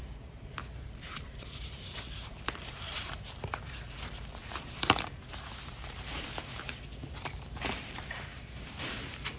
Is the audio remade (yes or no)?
yes